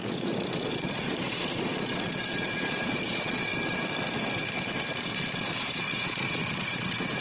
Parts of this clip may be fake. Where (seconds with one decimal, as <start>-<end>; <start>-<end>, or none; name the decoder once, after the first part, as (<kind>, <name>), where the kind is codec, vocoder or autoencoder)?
0.0-3.5 (vocoder, Vocos); 5.3-7.2